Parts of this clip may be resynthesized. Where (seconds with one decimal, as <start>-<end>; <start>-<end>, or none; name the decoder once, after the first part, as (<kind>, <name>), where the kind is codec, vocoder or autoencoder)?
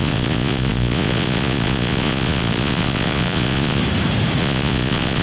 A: 0.0-3.8 (vocoder, Vocos); 4.4-5.2